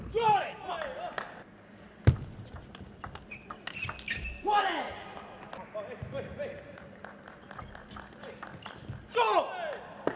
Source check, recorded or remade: recorded